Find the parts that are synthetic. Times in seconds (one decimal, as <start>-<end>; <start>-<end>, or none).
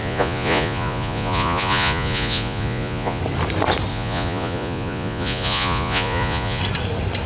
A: 0.0-3.2; 3.9-6.6